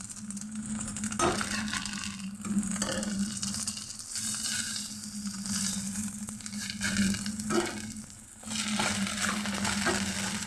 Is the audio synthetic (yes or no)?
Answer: no